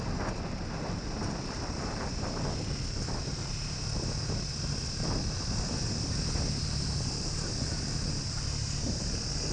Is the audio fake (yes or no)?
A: no